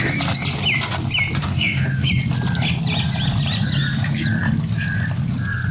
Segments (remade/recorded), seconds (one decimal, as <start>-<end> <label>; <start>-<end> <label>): 0.0-1.4 recorded; 1.4-2.1 remade; 2.1-5.7 recorded